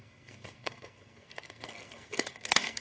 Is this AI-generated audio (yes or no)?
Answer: yes